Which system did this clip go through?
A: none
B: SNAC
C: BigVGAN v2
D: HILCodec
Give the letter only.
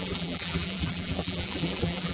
C